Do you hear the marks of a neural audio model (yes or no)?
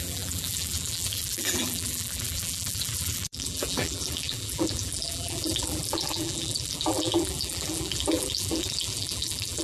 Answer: yes